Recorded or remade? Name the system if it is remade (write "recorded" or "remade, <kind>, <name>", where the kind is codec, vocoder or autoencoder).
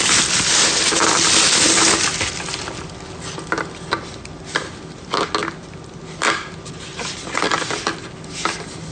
recorded